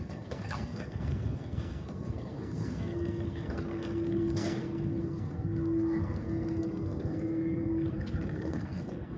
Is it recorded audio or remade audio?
remade